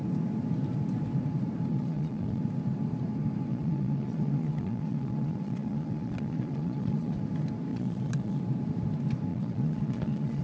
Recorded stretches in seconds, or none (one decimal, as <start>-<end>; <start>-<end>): 0.0-1.7; 2.4-3.5; 7.2-7.7; 8.4-9.3